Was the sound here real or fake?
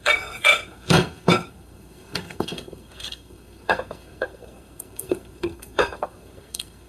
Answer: fake